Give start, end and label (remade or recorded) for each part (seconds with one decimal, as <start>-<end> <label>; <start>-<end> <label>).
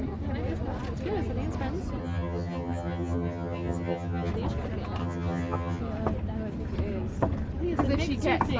0.0-2.0 recorded; 2.0-4.3 remade; 4.3-5.0 recorded; 5.0-5.8 remade; 5.8-8.6 recorded